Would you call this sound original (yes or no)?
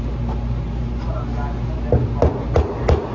yes